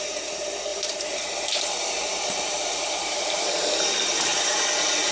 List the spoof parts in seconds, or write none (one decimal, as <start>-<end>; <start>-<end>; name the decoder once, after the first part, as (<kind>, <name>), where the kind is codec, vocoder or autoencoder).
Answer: 0.7-3.8 (vocoder, BigVGAN v2)